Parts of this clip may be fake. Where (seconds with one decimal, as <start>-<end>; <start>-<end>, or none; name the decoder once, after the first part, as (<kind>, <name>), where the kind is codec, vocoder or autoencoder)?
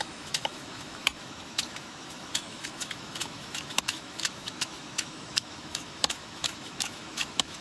0.0-7.6 (autoencoder, DAC-VAE)